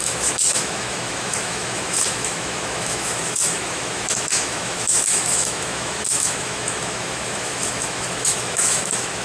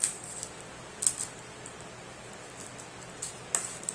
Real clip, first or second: second